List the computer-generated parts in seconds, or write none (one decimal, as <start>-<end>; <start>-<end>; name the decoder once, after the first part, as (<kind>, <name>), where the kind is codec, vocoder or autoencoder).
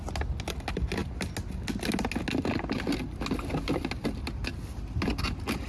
none